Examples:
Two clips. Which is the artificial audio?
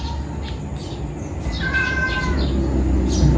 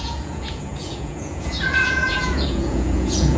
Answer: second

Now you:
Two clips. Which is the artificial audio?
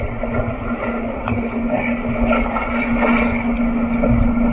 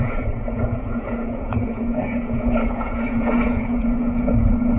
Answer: second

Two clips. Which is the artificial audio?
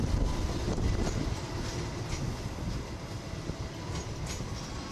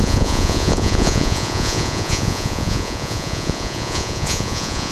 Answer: second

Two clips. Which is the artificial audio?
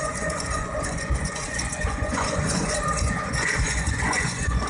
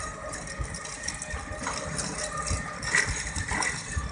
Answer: first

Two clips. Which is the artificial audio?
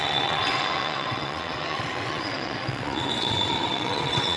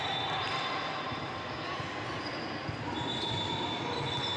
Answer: first